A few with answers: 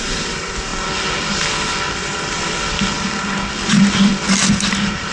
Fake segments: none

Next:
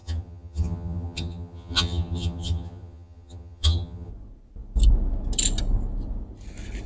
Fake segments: 0.0-4.1 (vocoder, HiFi-GAN)

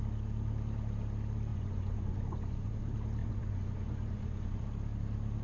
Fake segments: 1.5-2.8 (vocoder, Vocos); 3.2-4.6

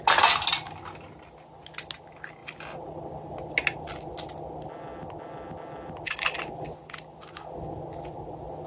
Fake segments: none

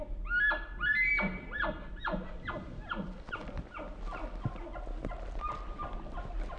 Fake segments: 0.8-3.5 (vocoder, BigVGAN v2)

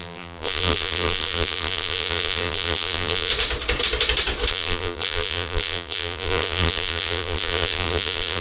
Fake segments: 0.0-3.3 (vocoder, BigVGAN v2); 4.5-8.4

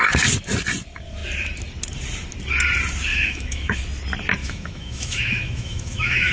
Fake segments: 3.1-3.8 (autoencoder, DAC-VAE); 4.4-6.3